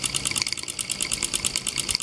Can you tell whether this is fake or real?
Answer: fake